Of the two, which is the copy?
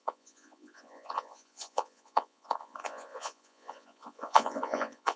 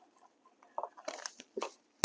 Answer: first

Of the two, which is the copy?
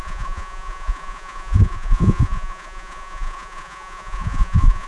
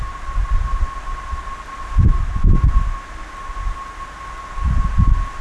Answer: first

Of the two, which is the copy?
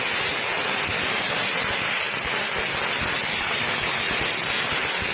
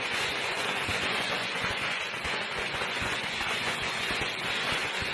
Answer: second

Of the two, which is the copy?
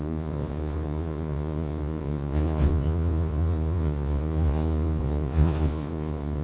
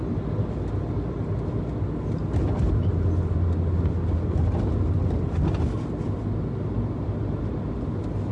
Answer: first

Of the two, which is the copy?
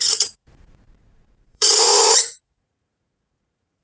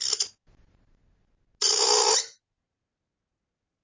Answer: first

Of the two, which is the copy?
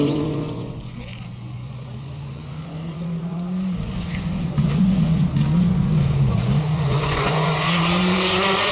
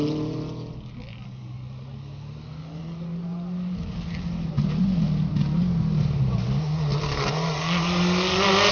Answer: first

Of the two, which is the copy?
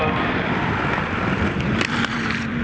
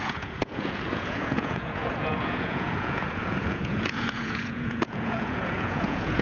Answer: second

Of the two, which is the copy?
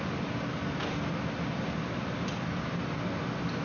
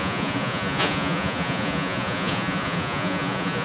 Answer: second